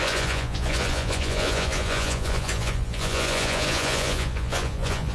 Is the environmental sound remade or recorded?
remade